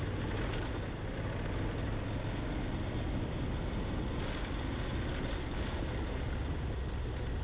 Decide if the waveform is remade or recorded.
recorded